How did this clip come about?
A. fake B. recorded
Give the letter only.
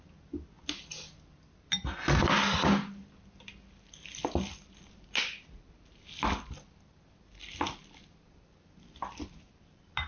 B